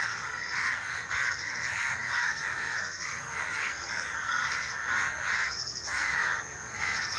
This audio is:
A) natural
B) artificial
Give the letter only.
B